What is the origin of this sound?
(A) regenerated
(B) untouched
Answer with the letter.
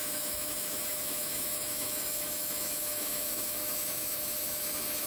A